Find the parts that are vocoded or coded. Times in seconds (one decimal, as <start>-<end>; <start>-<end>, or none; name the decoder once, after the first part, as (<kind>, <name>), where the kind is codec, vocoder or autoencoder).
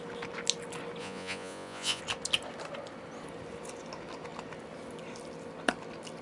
1.0-2.0 (vocoder, Vocos)